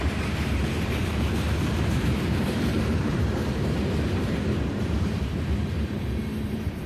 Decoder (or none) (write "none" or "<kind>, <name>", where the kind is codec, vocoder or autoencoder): vocoder, BigVGAN v2